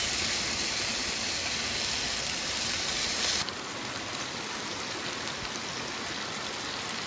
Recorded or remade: recorded